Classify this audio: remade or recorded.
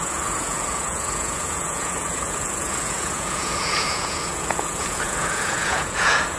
remade